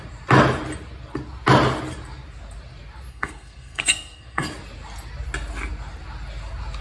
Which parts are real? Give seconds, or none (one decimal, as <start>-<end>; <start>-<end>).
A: 0.0-3.1; 4.5-6.8